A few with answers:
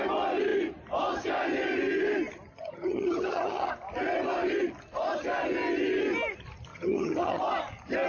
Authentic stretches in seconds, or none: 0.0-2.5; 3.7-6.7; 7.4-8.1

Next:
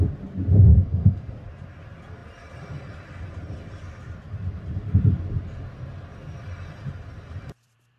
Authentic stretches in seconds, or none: 0.0-0.7; 1.3-8.0

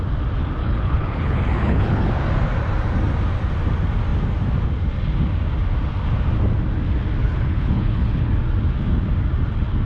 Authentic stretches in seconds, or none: 0.0-0.6; 2.1-7.2; 8.3-9.9

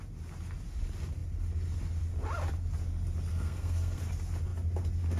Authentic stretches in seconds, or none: 0.0-3.3; 4.0-5.2

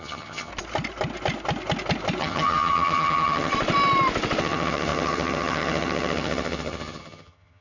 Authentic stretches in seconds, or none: 0.5-2.2; 3.5-4.4

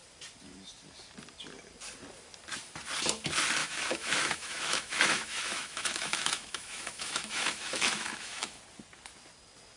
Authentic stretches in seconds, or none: 0.0-3.6; 8.6-9.8

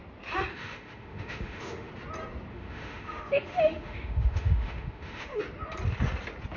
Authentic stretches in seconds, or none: 0.0-0.5; 1.9-2.5; 5.4-6.6